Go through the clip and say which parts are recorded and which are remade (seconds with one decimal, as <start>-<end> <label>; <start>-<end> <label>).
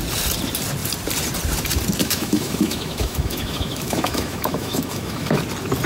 0.0-2.0 recorded; 2.0-5.4 remade; 5.4-5.9 recorded